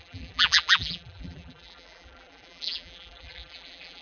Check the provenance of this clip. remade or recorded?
remade